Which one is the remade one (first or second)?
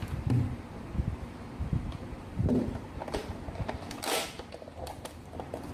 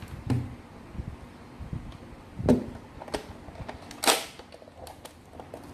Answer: first